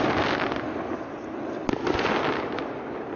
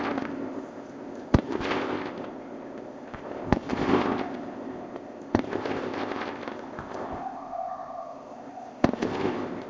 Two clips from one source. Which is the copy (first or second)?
second